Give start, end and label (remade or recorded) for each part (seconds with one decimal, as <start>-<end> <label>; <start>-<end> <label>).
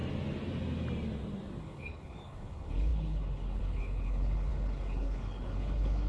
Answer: 0.0-1.6 recorded; 1.6-6.1 remade